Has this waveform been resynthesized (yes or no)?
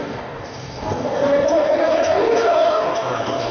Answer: yes